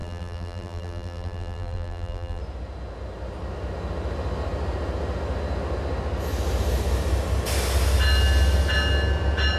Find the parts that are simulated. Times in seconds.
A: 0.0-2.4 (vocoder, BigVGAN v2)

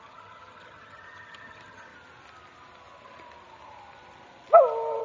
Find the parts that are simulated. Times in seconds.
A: 0.0-1.9 (vocoder, HiFi-GAN)